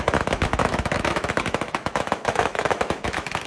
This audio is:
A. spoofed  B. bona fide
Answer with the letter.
A